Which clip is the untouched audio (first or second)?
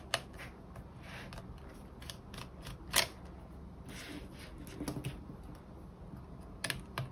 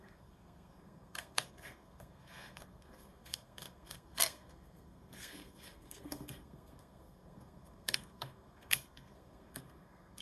first